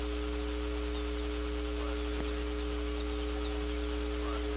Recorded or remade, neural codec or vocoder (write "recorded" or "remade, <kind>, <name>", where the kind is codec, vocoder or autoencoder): recorded